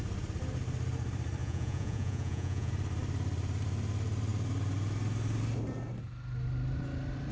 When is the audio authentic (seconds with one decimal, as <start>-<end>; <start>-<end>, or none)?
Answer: 0.0-1.4; 2.7-7.3